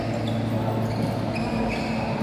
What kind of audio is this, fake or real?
real